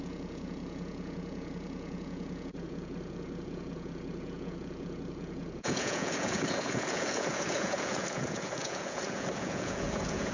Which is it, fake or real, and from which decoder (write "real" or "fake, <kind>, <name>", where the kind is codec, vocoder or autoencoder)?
fake, vocoder, Vocos